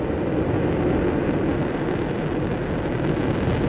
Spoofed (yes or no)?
no